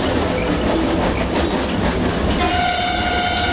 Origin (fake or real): real